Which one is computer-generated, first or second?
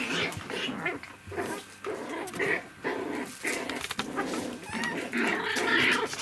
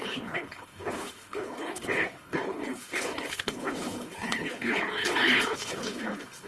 second